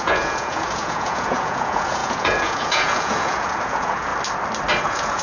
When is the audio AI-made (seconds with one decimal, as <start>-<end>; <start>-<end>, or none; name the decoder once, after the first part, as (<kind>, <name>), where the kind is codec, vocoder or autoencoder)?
0.0-4.1 (vocoder, Vocos); 4.8-5.2